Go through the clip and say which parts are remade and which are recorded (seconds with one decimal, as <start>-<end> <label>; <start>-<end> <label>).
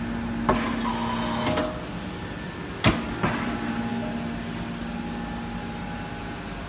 0.0-6.7 recorded